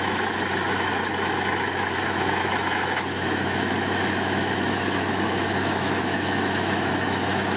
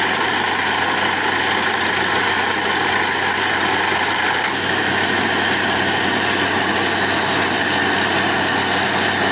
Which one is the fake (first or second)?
first